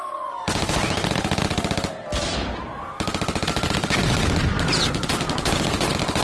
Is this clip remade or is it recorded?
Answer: recorded